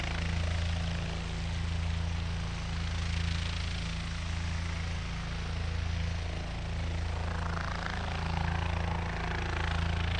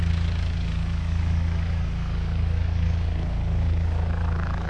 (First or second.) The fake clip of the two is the second